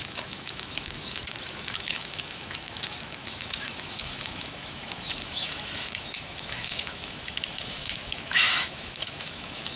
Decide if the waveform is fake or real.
fake